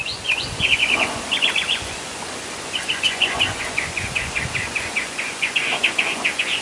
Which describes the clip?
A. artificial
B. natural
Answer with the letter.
A